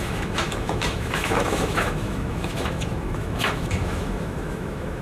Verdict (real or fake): fake